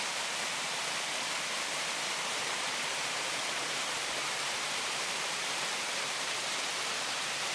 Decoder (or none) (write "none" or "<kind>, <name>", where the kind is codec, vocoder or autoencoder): vocoder, BigVGAN v2